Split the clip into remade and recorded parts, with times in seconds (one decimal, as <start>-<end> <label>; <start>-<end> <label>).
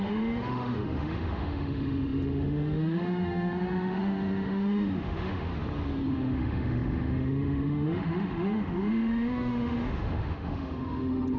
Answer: 0.0-5.5 remade; 5.5-6.1 recorded; 6.1-11.4 remade